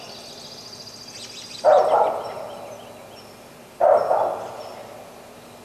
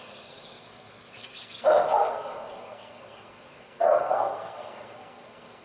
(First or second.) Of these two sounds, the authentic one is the first